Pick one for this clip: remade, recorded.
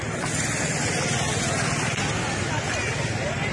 recorded